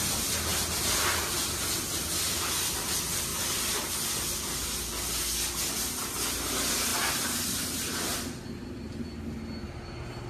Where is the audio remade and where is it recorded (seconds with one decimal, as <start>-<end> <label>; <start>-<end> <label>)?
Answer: 0.0-10.3 recorded

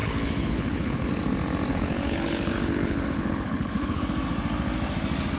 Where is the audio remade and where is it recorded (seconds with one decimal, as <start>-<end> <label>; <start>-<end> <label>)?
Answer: 0.0-1.1 remade; 1.1-1.7 recorded; 1.7-4.0 remade; 4.0-5.4 recorded

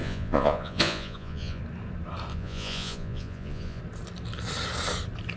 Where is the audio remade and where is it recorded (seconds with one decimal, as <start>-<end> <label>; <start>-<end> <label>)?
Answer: 0.0-1.6 remade; 1.6-2.3 recorded; 2.3-3.8 remade; 3.8-5.4 recorded

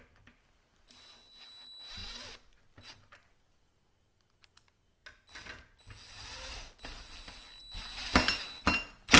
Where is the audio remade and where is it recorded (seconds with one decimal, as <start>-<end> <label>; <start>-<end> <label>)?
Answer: 0.0-9.2 recorded